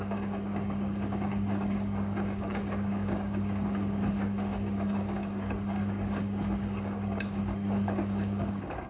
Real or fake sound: fake